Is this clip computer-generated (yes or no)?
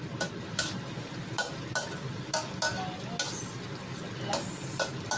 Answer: no